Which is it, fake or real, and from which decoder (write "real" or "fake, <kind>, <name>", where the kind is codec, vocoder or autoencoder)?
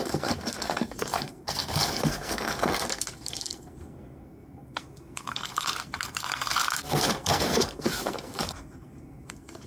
fake, codec, SNAC